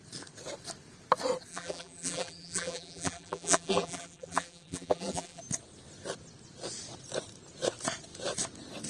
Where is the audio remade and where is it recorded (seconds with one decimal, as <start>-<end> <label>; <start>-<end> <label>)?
0.0-1.5 recorded; 1.5-5.4 remade; 5.4-8.9 recorded